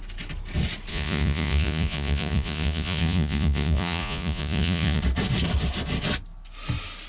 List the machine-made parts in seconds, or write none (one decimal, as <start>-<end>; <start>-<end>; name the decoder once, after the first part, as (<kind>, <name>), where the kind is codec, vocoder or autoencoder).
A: 0.9-5.0 (vocoder, Vocos)